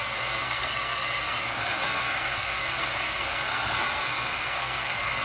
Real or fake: fake